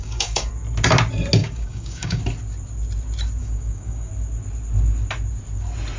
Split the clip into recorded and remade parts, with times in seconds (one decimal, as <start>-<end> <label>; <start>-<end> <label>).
0.0-0.5 remade; 0.5-1.4 recorded; 1.4-2.2 remade; 2.2-3.4 recorded; 3.4-4.1 remade; 4.1-6.0 recorded